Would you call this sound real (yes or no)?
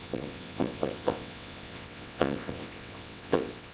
no